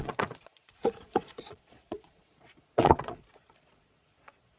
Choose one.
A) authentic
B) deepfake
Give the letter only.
B